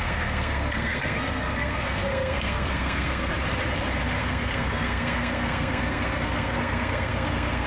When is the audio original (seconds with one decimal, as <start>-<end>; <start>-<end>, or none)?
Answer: 3.3-4.2

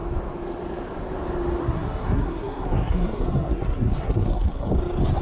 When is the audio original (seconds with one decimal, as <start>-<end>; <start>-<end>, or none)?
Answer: 0.0-1.6; 4.7-5.2

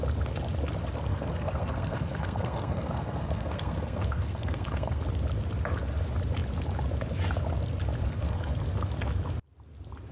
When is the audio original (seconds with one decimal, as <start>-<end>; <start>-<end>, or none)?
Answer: 0.0-1.1; 5.0-8.0; 8.6-10.1

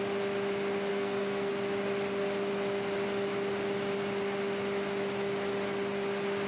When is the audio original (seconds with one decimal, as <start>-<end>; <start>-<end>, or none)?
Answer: 0.0-0.9; 1.5-6.5

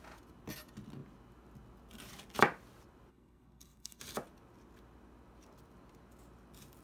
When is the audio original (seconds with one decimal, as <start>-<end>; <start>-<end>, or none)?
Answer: 0.0-3.1; 4.0-6.8